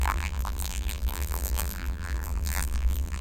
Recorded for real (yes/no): no